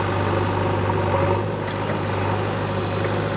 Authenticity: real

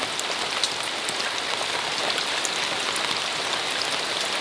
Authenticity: real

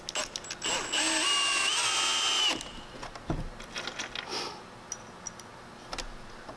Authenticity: real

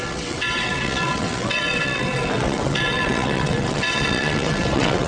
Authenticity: fake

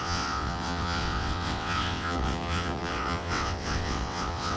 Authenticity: fake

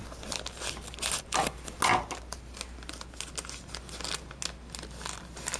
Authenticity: real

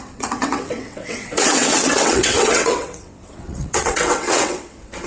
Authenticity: fake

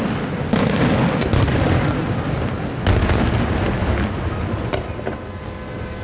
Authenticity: real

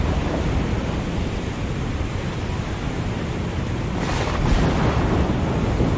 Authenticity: real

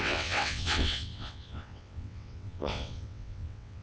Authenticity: fake